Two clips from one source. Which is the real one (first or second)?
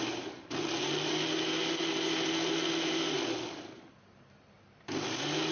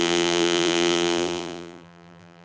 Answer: first